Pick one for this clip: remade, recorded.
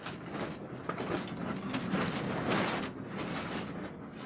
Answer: recorded